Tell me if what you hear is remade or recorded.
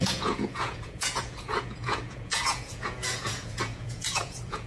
remade